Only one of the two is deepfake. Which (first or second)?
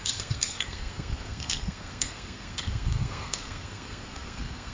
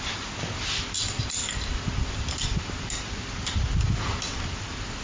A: first